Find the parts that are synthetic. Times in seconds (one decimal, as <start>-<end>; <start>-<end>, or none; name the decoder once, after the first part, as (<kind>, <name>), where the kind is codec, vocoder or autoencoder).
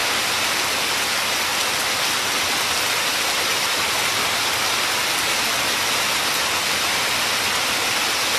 none